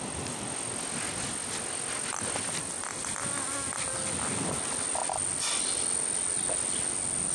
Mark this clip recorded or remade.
recorded